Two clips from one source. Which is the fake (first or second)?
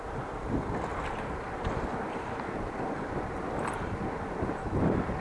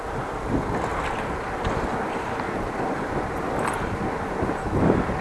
first